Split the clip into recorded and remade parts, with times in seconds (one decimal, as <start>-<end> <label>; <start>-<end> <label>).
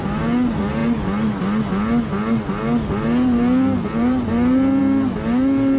0.0-5.8 recorded